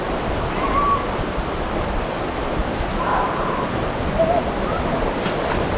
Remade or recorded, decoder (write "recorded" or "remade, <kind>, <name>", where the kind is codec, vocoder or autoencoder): recorded